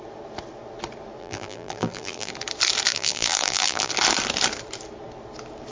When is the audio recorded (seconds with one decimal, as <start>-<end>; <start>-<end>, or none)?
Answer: 0.0-1.2; 2.3-2.9; 3.9-5.7